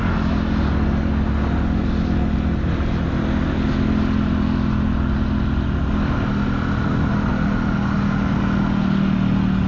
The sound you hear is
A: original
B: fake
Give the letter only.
A